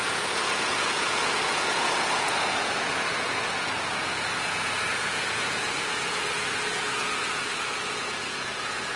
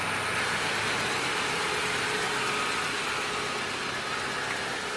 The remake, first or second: first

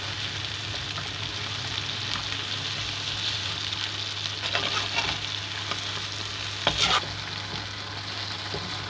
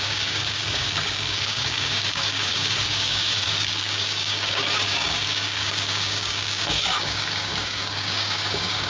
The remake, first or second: second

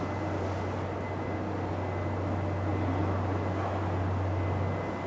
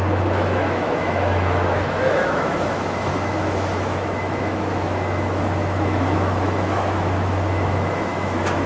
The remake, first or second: second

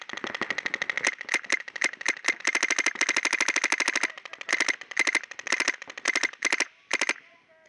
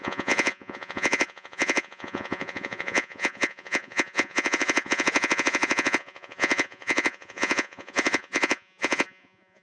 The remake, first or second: second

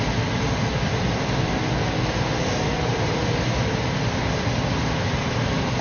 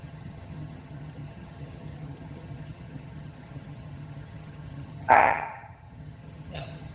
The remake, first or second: second